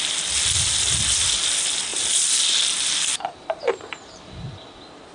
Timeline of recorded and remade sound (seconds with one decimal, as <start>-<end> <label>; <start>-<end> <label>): 0.0-5.1 recorded